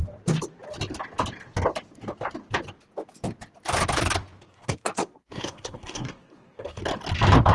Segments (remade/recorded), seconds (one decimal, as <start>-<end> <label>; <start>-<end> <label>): 0.0-4.5 recorded; 4.5-6.8 remade; 6.8-7.5 recorded